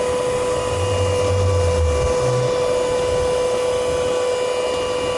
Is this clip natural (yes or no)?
yes